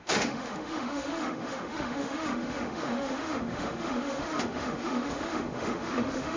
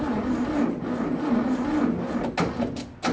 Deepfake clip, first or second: first